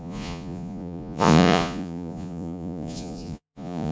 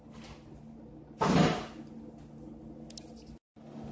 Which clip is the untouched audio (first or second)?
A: second